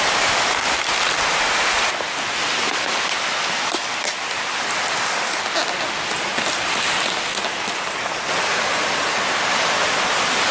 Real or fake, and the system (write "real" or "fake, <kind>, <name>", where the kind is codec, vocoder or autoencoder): real